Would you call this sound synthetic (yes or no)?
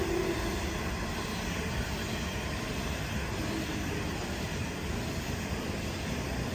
no